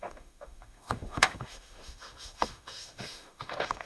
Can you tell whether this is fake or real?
fake